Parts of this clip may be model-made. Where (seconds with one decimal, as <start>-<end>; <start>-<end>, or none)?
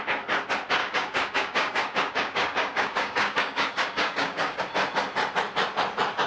0.8-4.6